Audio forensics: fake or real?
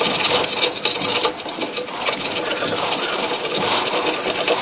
real